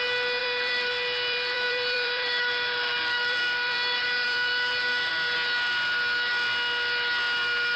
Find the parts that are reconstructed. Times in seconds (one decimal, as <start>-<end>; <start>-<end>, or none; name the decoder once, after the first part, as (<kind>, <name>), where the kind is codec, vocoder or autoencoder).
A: 0.4-5.1 (vocoder, BigVGAN v2)